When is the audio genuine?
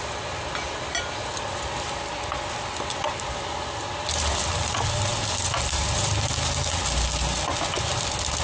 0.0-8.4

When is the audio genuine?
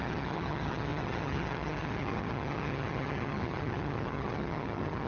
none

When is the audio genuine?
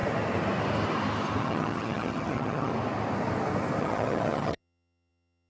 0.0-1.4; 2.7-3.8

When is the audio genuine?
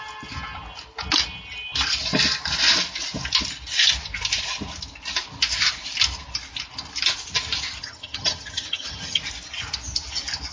0.0-7.8; 9.2-10.5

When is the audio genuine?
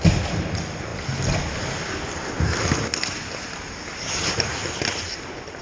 0.0-5.6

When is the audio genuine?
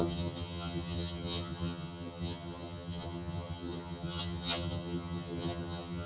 none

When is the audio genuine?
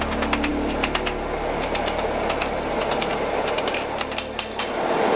0.0-5.2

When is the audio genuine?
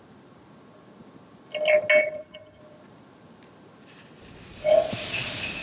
0.0-2.0; 2.6-5.6